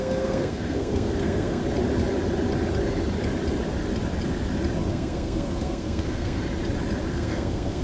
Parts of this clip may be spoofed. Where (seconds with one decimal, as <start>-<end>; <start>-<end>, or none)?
0.0-1.6; 4.9-6.4; 7.1-7.8